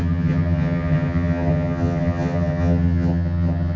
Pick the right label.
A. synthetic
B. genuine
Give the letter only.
A